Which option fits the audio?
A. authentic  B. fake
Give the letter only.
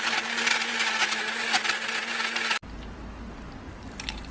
A